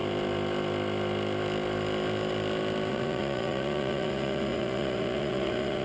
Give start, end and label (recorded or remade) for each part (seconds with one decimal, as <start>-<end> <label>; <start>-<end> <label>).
0.0-2.9 recorded; 2.9-5.8 remade